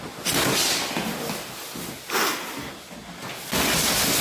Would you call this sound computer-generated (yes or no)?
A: no